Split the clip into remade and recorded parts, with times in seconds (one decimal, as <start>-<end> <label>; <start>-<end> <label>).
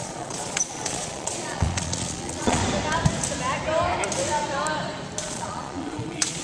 0.0-2.6 remade; 2.6-5.2 recorded; 5.2-6.4 remade